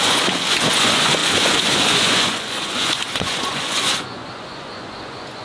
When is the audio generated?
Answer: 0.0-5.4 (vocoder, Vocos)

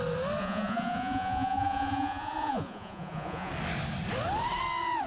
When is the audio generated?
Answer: 0.4-3.5 (vocoder, Vocos)